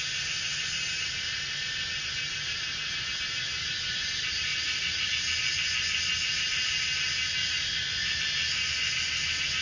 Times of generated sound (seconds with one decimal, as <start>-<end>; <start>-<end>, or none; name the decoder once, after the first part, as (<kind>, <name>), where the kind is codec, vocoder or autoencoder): 4.5-5.1 (vocoder, Vocos); 7.4-8.2